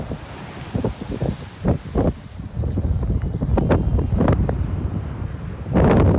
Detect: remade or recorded recorded